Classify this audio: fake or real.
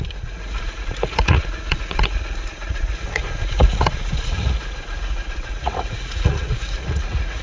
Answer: fake